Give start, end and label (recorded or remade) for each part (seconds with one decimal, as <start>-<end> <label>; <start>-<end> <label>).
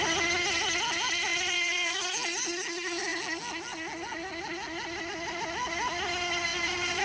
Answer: 0.0-1.3 recorded; 1.3-2.0 remade; 2.0-6.5 recorded; 6.5-7.0 remade